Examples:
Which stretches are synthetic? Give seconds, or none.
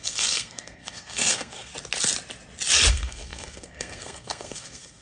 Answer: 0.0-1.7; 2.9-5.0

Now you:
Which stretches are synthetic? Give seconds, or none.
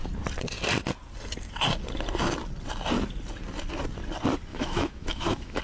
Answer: 4.5-5.6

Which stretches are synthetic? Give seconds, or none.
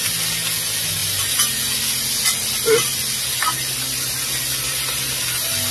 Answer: none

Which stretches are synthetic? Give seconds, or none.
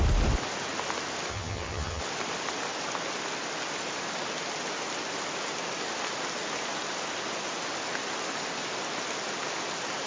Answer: 1.3-2.0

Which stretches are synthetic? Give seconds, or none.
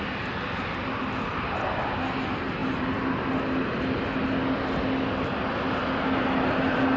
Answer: none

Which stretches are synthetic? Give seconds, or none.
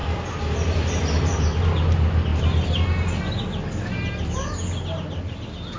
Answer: none